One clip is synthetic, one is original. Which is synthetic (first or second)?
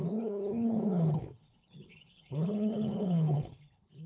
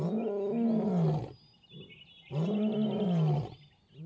first